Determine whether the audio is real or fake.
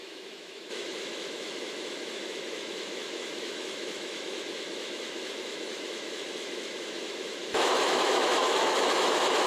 fake